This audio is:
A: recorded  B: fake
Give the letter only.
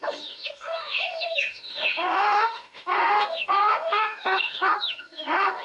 B